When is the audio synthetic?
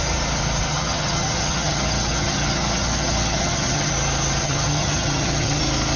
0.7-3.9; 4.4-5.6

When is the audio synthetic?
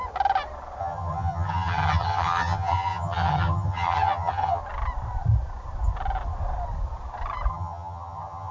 0.8-4.6; 7.5-8.5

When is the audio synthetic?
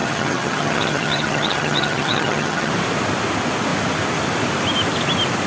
0.0-2.7